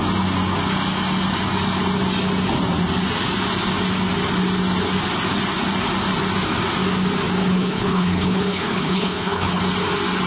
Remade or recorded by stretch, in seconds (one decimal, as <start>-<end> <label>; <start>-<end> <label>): 0.0-7.4 recorded; 7.4-9.6 remade; 9.6-10.3 recorded